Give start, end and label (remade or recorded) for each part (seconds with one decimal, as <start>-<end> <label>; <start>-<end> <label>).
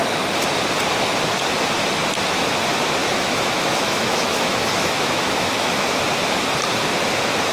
0.0-3.0 recorded; 3.0-6.0 remade; 6.0-7.5 recorded